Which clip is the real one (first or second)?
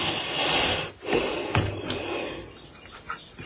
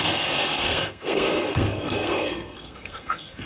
first